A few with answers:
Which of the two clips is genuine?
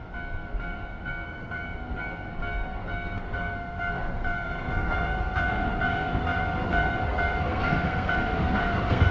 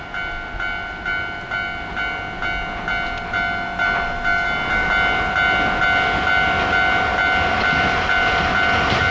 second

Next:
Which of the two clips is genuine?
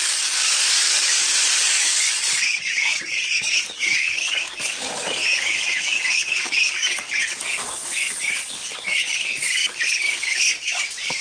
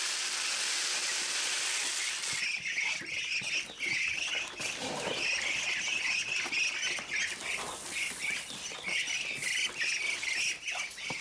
second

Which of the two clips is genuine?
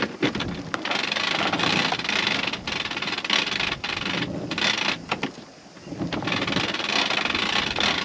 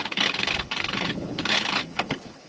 first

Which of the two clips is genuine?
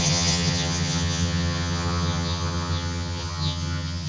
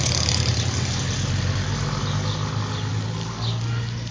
second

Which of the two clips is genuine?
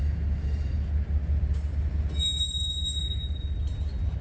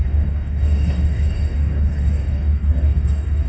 first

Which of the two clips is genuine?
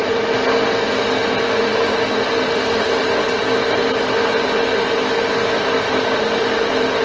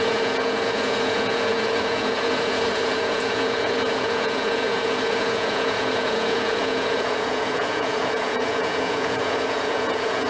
first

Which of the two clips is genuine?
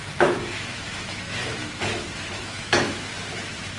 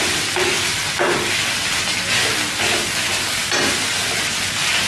second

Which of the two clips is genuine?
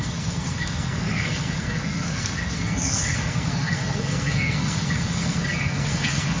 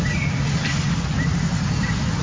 second